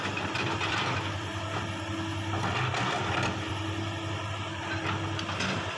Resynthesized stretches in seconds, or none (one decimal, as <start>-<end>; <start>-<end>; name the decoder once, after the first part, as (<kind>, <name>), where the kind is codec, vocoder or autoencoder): 0.0-1.3 (vocoder, BigVGAN v2); 2.5-5.8